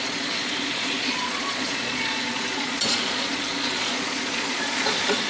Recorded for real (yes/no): no